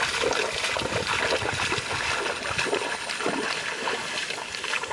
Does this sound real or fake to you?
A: real